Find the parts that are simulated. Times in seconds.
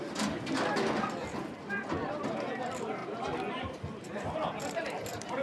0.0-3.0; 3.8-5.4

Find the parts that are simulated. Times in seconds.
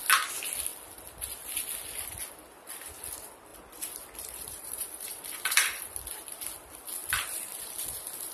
3.5-6.0; 7.0-7.6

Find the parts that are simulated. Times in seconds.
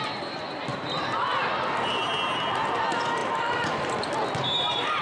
0.7-1.3; 3.2-4.3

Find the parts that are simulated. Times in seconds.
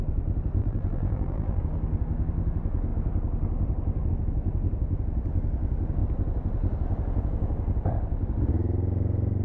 0.6-1.6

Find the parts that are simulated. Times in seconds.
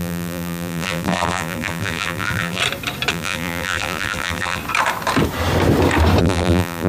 0.0-2.6; 3.1-4.6; 6.2-6.9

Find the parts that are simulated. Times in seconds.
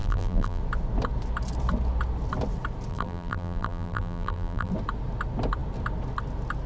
0.0-0.6; 2.9-4.7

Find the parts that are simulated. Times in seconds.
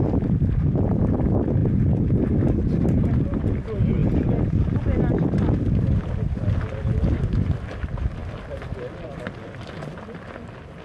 1.6-3.2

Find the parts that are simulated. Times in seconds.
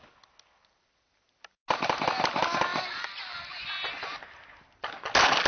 none